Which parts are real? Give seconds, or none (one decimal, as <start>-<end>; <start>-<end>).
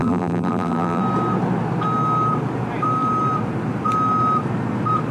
1.0-5.1